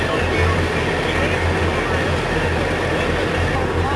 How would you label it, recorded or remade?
recorded